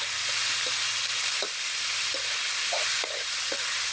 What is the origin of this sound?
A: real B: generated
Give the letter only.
A